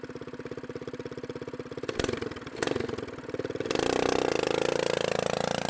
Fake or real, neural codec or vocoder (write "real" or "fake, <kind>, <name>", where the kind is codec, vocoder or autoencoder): real